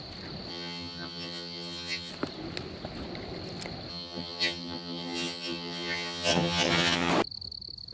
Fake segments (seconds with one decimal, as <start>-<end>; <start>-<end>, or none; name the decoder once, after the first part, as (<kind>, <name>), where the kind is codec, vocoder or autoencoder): 0.5-2.1 (vocoder, HiFi-GAN); 3.9-7.1